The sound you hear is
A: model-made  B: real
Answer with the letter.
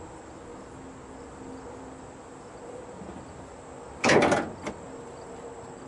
B